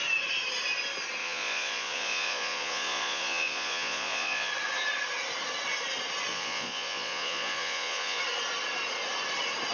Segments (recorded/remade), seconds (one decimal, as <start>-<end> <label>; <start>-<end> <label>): 0.0-1.2 recorded; 1.2-4.5 remade; 4.5-6.3 recorded; 6.3-8.2 remade; 8.2-9.7 recorded